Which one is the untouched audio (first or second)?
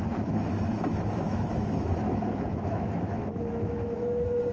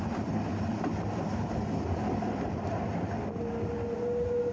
second